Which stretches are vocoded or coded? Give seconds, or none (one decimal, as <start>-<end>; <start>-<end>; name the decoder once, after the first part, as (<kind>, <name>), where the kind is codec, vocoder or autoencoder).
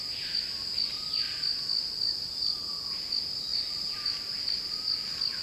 3.5-4.1 (vocoder, BigVGAN v2)